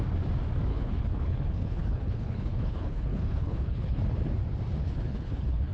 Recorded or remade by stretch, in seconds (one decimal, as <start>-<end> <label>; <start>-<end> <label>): 0.0-0.7 recorded; 0.7-4.0 remade; 4.0-4.8 recorded; 4.8-5.7 remade